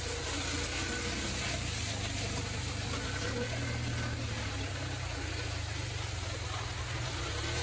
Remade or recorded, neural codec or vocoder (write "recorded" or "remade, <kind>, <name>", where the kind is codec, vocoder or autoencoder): recorded